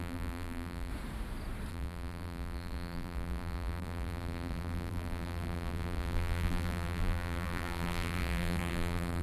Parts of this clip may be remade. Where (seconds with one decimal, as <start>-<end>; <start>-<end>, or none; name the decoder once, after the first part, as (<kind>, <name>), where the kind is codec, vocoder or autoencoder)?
0.0-0.9 (vocoder, BigVGAN v2); 1.7-9.2